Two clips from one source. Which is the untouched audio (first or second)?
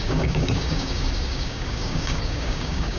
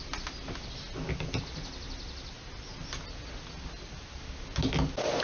second